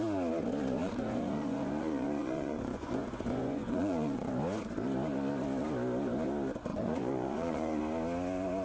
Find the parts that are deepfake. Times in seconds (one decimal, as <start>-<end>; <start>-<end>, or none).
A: 0.8-4.3; 6.7-7.8